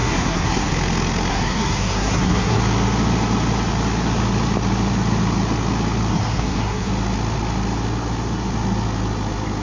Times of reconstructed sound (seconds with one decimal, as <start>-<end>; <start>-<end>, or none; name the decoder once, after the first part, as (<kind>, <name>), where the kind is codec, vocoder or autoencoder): 0.0-0.7 (codec, SNAC); 1.3-2.6; 6.1-6.9

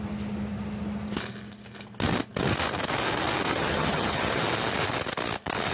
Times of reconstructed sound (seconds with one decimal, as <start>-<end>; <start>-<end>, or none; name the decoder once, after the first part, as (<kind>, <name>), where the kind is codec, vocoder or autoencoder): 3.5-4.4 (vocoder, HiFi-GAN)

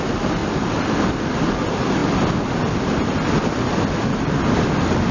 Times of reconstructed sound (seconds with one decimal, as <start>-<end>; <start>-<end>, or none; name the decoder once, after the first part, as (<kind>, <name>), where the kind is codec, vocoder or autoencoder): none

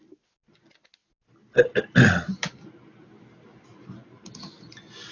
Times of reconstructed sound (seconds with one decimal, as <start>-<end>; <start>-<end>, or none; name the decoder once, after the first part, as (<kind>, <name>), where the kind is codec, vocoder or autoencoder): none

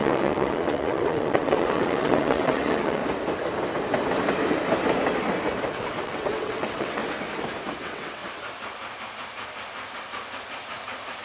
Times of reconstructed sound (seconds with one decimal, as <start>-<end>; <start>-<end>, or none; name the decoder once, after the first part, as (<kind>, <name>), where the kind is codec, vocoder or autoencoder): 0.0-3.0 (vocoder, WaveNeXt); 5.7-7.0; 7.8-8.2

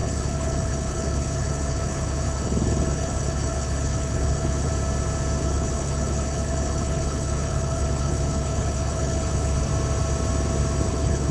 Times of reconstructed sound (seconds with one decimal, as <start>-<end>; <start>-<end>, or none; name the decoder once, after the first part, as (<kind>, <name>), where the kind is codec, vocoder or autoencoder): 0.0-4.7 (codec, HILCodec); 5.4-9.7; 10.9-11.3

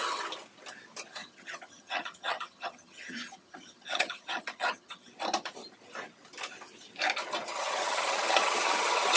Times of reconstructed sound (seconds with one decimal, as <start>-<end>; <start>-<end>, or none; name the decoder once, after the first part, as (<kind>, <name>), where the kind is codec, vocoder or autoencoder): 1.2-5.1 (vocoder, HiFi-GAN); 7.5-9.2